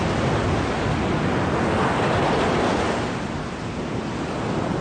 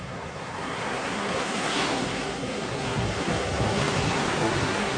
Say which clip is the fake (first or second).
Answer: second